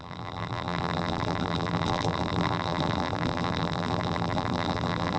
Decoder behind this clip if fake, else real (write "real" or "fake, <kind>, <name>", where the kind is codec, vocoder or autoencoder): fake, vocoder, BigVGAN v2